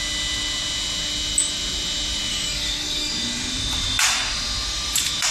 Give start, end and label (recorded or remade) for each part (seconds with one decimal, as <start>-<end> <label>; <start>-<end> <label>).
0.0-2.3 recorded; 2.3-3.1 remade; 3.1-5.3 recorded